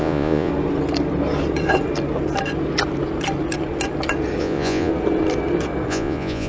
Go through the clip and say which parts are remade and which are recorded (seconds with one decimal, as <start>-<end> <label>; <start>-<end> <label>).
0.0-0.5 remade; 0.5-4.4 recorded; 4.4-4.9 remade; 4.9-5.9 recorded; 5.9-6.5 remade